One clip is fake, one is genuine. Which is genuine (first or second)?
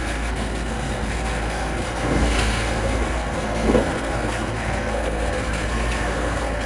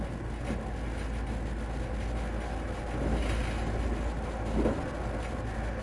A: second